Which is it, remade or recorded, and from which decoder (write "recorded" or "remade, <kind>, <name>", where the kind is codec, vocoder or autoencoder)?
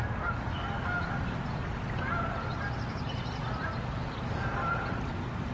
recorded